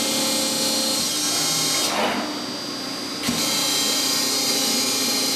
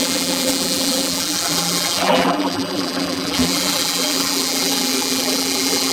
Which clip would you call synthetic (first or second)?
second